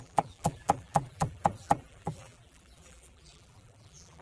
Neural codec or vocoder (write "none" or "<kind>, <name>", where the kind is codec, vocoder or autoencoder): vocoder, BigVGAN v2